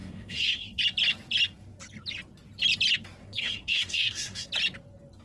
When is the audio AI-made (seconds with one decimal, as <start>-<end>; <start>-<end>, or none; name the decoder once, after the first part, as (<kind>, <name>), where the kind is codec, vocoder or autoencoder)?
0.0-0.8 (codec, SNAC); 3.2-4.5